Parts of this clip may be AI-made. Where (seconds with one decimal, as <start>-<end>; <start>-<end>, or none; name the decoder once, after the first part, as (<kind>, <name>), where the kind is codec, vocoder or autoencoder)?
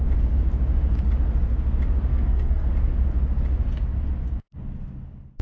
2.1-2.7 (codec, SNAC)